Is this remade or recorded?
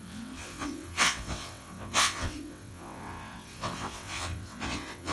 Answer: remade